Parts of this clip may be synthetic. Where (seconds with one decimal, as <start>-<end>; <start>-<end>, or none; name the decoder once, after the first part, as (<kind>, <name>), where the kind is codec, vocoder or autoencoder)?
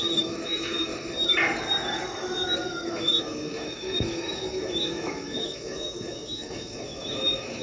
0.0-0.9 (autoencoder, DAC-VAE); 2.9-7.6